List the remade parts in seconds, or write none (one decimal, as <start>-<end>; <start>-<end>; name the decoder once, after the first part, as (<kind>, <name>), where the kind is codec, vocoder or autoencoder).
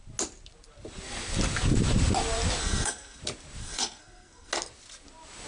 2.6-3.2 (codec, SNAC); 3.6-4.5